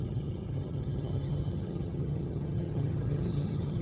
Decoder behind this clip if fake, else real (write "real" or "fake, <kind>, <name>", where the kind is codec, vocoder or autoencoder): fake, vocoder, HiFi-GAN